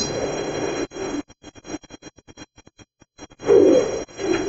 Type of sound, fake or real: fake